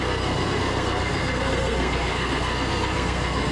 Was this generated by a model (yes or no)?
yes